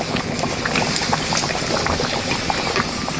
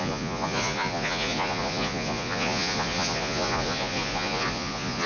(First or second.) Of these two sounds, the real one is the first